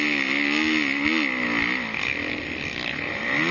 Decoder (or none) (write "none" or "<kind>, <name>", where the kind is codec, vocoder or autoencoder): none